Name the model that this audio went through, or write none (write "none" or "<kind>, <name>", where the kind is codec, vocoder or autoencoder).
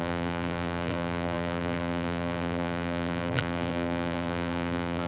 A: vocoder, BigVGAN v2